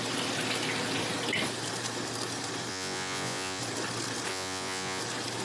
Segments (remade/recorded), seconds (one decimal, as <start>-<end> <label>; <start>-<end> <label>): 0.0-2.7 recorded; 2.7-3.6 remade; 3.6-4.3 recorded; 4.3-5.0 remade; 5.0-5.4 recorded